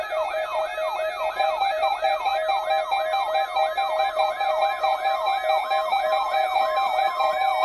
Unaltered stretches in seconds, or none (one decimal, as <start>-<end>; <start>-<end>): 0.7-1.3; 2.3-4.1; 5.3-6.0

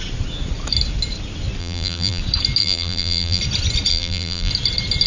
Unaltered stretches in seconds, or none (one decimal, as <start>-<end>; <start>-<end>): 0.0-1.6; 2.2-2.6; 3.4-3.9; 4.5-5.1